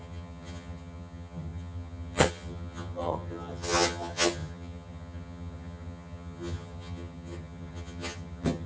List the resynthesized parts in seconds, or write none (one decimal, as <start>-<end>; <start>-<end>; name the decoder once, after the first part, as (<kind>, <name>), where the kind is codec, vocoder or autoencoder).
0.0-8.7 (vocoder, HiFi-GAN)